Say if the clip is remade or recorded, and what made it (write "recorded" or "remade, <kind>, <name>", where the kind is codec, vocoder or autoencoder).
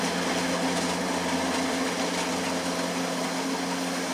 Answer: recorded